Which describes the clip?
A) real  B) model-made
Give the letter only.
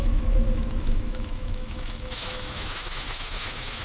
B